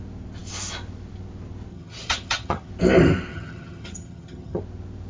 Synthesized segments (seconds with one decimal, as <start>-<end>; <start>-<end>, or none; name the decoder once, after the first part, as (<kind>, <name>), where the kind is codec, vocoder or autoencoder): 1.7-2.7 (vocoder, HiFi-GAN); 3.3-4.6